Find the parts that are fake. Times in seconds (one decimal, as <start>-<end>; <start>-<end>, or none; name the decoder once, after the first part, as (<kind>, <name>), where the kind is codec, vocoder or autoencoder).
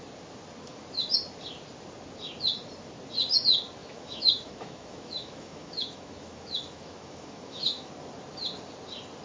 3.8-7.9 (autoencoder, DAC-VAE)